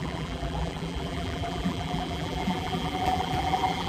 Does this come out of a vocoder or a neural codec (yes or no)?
yes